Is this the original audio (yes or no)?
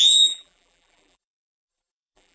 no